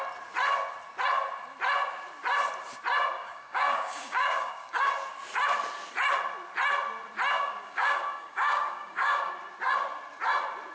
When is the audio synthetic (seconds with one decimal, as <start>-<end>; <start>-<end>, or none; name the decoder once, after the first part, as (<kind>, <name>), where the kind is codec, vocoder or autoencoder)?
3.2-4.9 (codec, DAC); 7.3-9.3